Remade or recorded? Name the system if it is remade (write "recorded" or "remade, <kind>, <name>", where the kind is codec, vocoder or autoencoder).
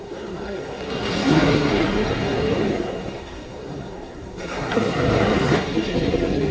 remade, codec, SNAC